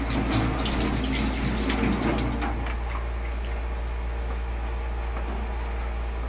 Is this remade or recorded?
recorded